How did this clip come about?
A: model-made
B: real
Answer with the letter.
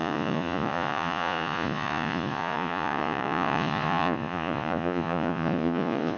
A